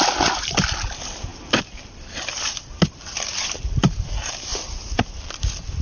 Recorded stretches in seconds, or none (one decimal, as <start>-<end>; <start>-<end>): 0.0-4.5; 5.0-5.8